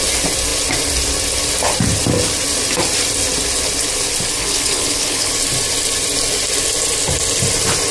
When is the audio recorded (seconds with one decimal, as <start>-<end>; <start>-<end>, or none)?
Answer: 0.0-4.3; 5.3-7.9